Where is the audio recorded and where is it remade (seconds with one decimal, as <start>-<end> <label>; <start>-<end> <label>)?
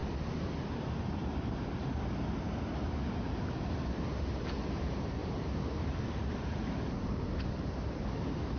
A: 0.0-0.8 recorded; 0.8-8.6 remade